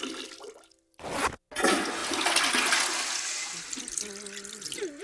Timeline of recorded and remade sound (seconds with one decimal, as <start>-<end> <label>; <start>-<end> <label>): 0.0-5.0 recorded